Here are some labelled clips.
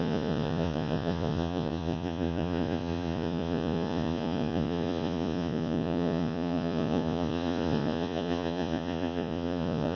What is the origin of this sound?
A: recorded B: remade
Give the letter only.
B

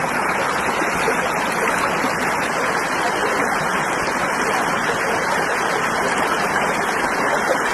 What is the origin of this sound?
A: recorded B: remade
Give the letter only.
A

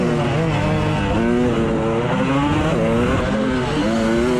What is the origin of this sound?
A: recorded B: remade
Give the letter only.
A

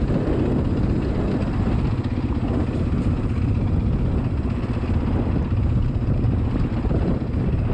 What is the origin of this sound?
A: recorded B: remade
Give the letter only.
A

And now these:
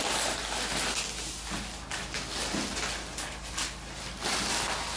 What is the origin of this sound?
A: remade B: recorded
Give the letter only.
B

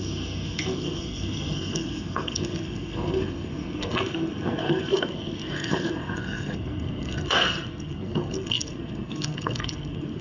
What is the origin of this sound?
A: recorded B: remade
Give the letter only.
B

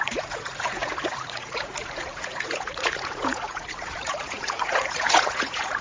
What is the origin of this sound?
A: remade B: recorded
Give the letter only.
A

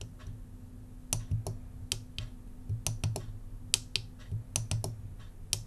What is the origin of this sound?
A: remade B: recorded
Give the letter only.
B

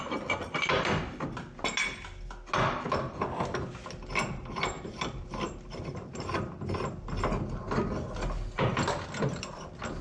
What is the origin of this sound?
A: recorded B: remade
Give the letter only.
A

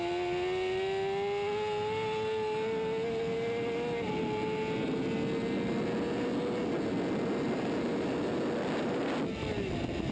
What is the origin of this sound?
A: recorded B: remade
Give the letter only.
A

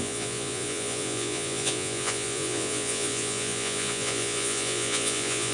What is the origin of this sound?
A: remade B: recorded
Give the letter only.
A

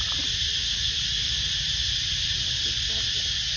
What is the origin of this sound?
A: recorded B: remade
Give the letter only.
A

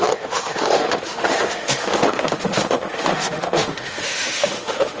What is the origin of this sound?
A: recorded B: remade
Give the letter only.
B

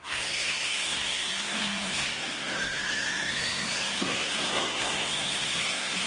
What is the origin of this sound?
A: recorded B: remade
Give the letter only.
B